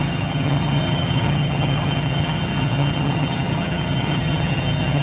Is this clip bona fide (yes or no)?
no